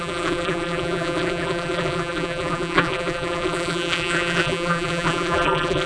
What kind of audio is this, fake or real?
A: fake